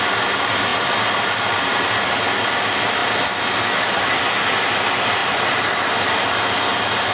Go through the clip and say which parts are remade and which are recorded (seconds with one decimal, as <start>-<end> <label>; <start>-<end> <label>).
0.0-7.1 recorded